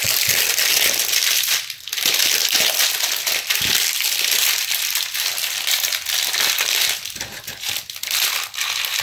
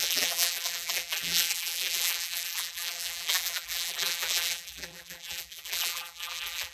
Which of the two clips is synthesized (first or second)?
second